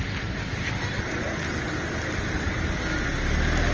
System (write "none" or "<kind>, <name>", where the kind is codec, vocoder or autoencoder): none